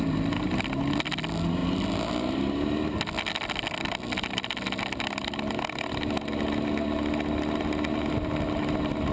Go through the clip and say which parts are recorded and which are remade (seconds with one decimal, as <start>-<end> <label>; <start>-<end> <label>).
0.0-9.1 recorded